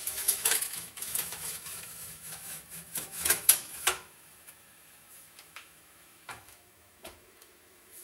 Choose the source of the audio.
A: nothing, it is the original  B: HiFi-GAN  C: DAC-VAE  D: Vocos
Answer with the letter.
C